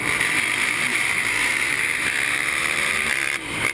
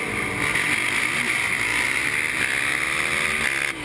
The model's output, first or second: first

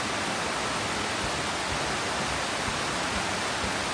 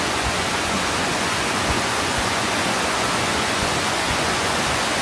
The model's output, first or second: second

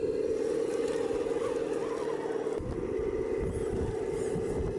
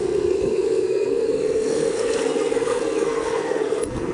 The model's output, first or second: second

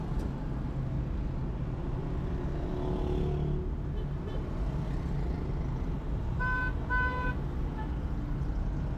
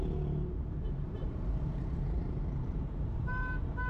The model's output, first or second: second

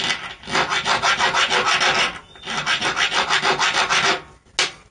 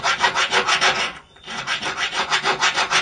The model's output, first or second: second